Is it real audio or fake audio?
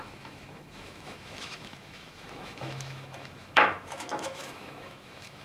fake